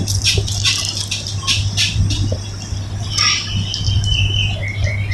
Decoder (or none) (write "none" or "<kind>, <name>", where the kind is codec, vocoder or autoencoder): none